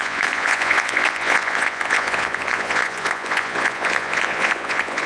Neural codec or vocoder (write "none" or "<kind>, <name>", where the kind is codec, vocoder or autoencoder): vocoder, Vocos